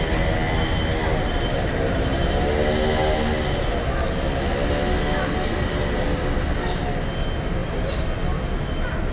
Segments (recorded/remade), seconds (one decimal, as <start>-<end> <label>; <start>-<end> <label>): 0.0-7.6 recorded; 7.6-8.2 remade; 8.2-9.1 recorded